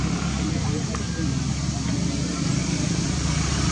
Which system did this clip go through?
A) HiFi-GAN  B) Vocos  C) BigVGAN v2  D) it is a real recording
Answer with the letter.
D